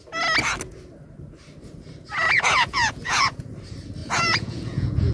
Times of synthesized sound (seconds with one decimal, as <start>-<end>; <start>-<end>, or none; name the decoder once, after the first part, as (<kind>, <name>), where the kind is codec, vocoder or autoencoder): 2.2-3.5 (vocoder, Vocos); 4.0-5.1